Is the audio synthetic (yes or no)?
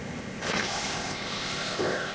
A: yes